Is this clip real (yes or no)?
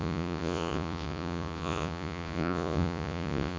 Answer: no